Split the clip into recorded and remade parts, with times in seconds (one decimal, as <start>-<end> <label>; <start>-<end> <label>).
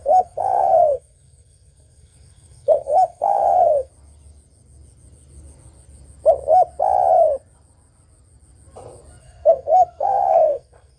0.0-3.9 remade; 3.9-9.2 recorded; 9.2-11.0 remade